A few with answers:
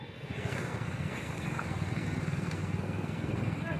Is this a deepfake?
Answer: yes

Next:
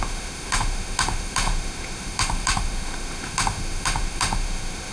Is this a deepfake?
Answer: yes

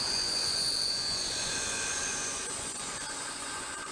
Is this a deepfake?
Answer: yes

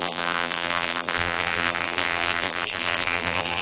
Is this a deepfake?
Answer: yes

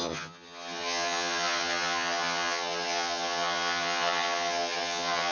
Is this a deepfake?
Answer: yes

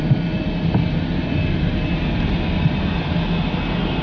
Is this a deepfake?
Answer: no